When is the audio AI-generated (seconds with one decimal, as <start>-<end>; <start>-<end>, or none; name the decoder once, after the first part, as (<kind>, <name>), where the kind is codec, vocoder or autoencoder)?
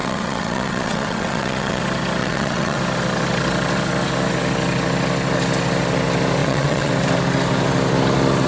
0.0-1.8 (vocoder, WaveNeXt); 2.2-2.8; 6.4-6.9